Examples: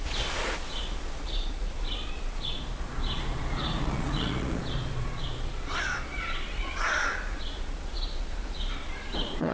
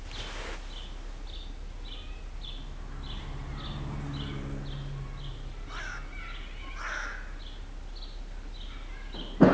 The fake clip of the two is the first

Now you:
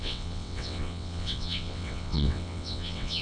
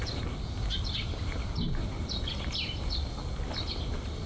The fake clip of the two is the first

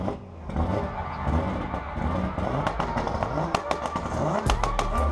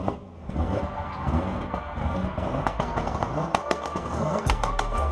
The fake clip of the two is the second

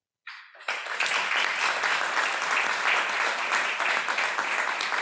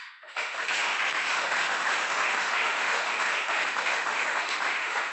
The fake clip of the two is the second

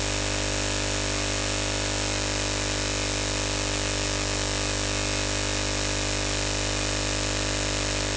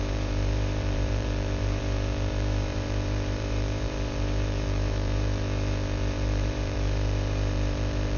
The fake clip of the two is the second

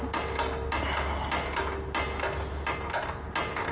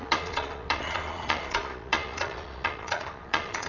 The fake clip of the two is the second